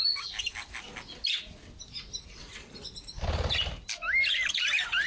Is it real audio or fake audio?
real